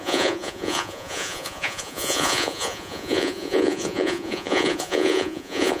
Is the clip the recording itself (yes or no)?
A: no